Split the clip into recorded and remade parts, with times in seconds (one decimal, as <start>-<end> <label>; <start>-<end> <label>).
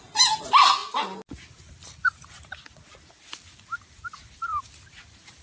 0.0-5.4 recorded